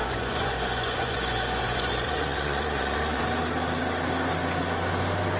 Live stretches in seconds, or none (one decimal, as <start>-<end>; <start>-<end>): 3.2-5.4